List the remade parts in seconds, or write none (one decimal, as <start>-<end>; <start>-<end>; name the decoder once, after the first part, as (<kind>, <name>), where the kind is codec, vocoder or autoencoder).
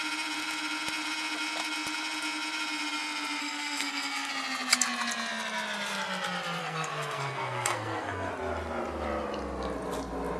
3.4-4.3 (codec, SNAC); 6.6-8.3